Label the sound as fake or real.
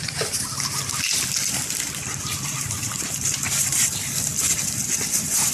fake